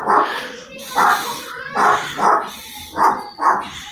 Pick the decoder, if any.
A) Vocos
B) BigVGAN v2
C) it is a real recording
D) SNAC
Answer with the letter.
C